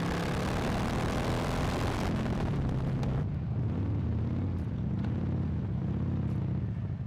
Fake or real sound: real